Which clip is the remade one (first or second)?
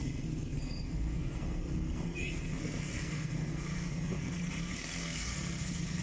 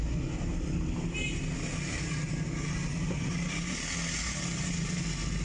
first